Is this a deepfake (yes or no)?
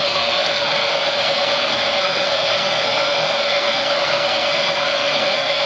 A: yes